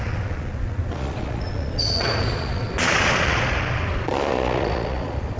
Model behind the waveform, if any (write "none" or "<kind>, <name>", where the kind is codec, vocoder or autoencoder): vocoder, Vocos